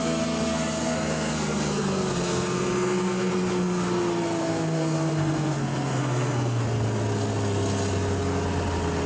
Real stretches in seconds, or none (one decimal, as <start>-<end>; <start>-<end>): 3.3-4.4; 6.6-9.1